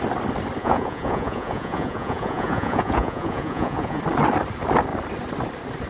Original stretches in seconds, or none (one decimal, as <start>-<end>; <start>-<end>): 0.0-0.6; 4.0-5.9